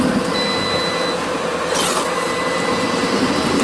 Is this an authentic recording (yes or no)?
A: yes